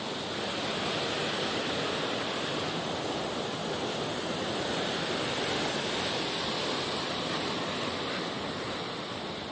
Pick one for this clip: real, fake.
real